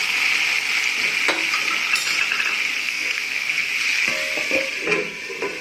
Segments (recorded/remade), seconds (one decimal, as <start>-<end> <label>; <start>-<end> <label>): 0.0-2.8 recorded; 2.8-3.7 remade; 3.7-5.6 recorded